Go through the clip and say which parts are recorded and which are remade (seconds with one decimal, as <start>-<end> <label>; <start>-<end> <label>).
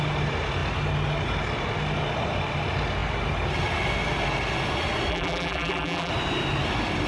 0.0-5.1 recorded; 5.1-6.1 remade; 6.1-7.1 recorded